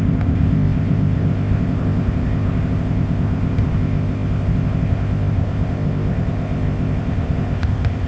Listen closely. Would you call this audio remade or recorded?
remade